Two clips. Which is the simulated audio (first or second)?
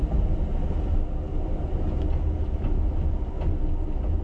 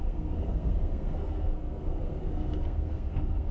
second